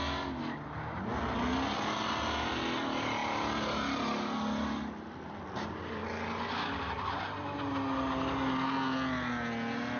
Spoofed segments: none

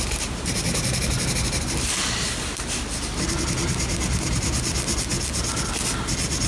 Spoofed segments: none

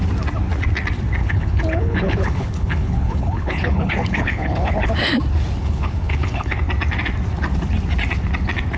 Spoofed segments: 1.2-4.9 (codec, HILCodec); 5.6-6.6

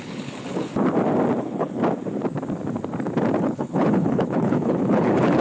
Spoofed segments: 0.0-0.7 (codec, HILCodec); 1.4-1.8; 3.4-5.4

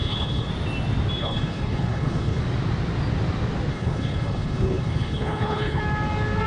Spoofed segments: 0.0-0.5 (codec, HILCodec); 1.2-2.4; 3.7-5.8